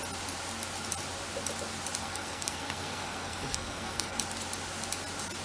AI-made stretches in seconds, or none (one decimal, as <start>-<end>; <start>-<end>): 2.0-4.2